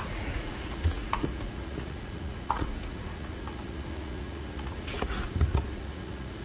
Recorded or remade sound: remade